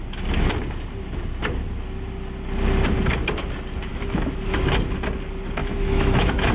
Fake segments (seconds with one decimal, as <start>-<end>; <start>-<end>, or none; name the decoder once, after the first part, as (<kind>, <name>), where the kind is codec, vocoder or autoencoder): 3.9-4.6 (autoencoder, DAC-VAE); 5.6-6.5